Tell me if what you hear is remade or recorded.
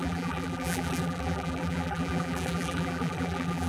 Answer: remade